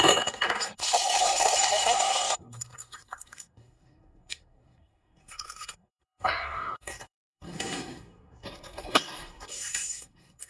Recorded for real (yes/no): no